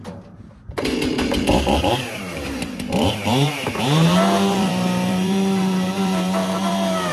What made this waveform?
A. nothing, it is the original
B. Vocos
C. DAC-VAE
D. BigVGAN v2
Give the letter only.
D